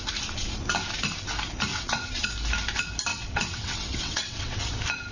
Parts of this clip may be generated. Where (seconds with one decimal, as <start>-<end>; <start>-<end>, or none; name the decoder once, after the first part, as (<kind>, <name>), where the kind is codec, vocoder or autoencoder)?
1.7-2.3 (vocoder, WaveNeXt); 3.1-4.6